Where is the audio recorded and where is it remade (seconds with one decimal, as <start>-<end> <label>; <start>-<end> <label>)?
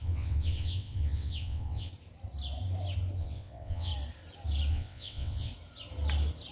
0.0-1.9 remade; 1.9-3.2 recorded; 3.2-3.9 remade; 3.9-4.7 recorded; 4.7-5.5 remade; 5.5-6.5 recorded